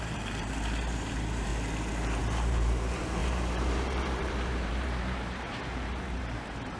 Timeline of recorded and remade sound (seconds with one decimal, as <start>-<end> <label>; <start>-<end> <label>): 0.0-1.5 remade; 1.5-2.2 recorded; 2.2-6.8 remade